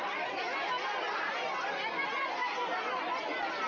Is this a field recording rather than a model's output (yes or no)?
yes